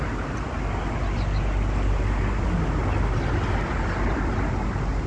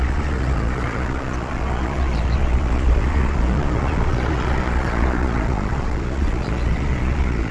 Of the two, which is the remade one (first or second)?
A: second